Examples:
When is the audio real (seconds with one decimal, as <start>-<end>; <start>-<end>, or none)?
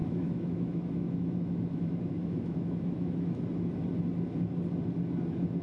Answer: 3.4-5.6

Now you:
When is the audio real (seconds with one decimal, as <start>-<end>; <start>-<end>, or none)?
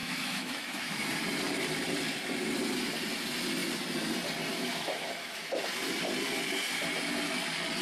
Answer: 1.0-4.5; 5.6-7.8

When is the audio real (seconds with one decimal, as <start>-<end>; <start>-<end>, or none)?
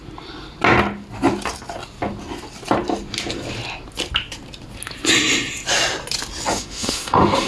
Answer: 0.0-6.5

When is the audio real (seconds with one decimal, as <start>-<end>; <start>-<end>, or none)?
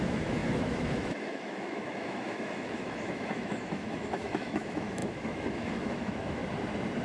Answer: 6.4-7.0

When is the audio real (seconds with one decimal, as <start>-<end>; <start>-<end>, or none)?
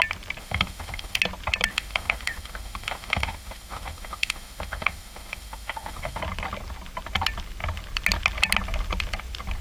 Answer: 0.0-0.4; 1.2-1.7; 6.2-9.6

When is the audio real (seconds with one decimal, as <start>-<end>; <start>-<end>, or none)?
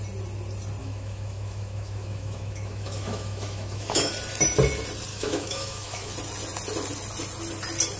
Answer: 0.0-0.8; 4.1-5.1; 6.1-8.0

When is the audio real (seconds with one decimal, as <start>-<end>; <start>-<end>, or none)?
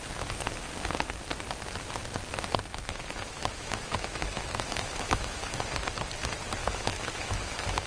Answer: 0.0-2.7; 5.6-6.6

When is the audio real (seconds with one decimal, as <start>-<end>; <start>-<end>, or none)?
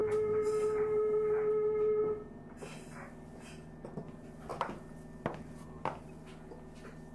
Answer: 0.0-7.1